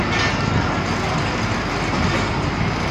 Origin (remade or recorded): recorded